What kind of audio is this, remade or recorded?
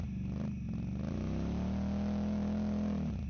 recorded